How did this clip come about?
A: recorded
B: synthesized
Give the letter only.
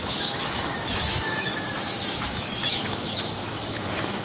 B